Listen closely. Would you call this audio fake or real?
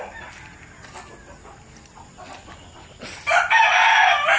real